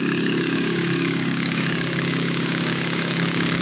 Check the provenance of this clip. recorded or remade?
remade